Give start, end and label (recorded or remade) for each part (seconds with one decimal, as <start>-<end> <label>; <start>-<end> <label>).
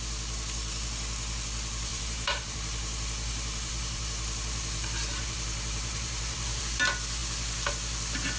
0.0-1.9 recorded; 1.9-6.6 remade; 6.6-8.4 recorded